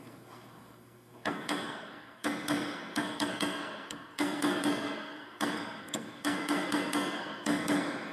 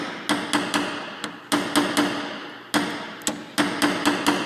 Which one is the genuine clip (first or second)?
second